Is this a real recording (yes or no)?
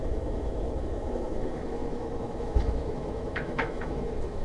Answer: no